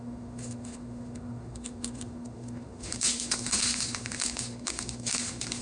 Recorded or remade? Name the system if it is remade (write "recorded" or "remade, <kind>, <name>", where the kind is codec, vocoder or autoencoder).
remade, autoencoder, DAC-VAE